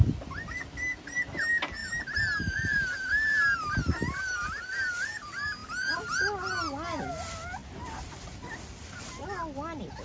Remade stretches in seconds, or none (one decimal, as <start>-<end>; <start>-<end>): none